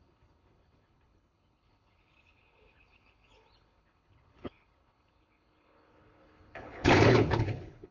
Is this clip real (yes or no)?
no